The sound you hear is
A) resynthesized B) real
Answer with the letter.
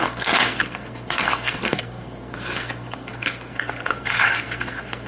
A